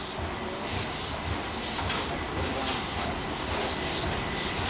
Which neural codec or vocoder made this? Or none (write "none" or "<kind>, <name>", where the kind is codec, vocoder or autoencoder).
none